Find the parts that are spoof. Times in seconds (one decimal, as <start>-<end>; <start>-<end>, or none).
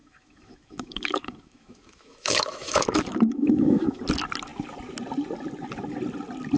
0.0-4.0